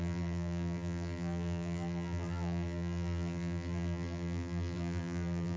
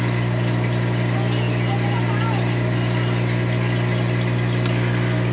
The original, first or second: second